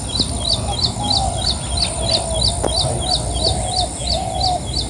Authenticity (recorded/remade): recorded